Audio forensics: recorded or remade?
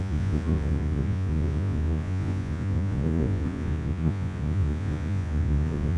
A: remade